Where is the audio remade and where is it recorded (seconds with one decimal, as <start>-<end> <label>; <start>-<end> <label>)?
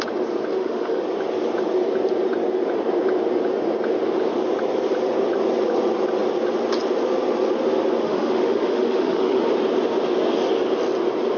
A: 0.0-0.5 recorded; 0.5-1.0 remade; 1.0-8.0 recorded; 8.0-9.4 remade; 9.4-11.4 recorded